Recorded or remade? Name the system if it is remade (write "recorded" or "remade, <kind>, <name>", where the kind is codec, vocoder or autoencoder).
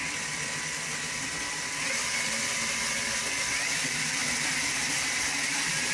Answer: remade, vocoder, BigVGAN v2